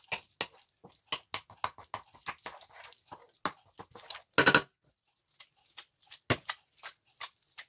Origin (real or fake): real